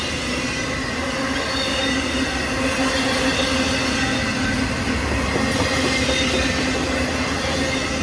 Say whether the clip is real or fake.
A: real